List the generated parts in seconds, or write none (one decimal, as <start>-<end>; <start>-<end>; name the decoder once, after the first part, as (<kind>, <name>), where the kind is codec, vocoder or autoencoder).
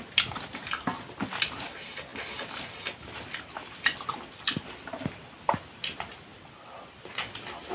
none